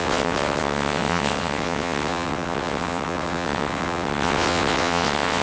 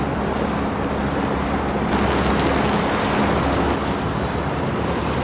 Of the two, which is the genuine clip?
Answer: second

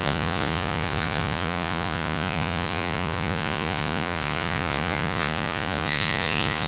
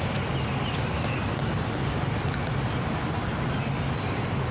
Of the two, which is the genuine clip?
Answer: second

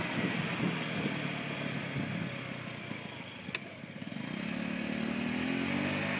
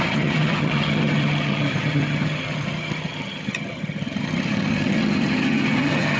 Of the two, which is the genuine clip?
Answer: first